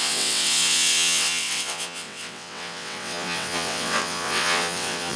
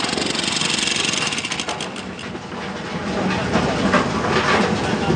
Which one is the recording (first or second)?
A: second